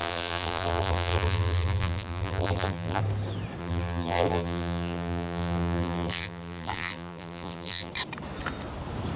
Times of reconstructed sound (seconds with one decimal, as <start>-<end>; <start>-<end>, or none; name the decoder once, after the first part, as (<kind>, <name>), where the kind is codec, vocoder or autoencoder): 0.0-3.0 (vocoder, BigVGAN v2); 3.6-7.9